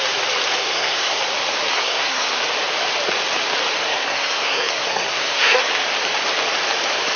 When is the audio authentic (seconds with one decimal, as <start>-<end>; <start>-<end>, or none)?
0.0-0.6; 1.2-1.7; 2.4-3.9; 5.7-7.2